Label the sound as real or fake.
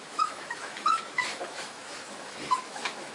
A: fake